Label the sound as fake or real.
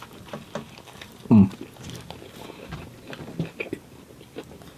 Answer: real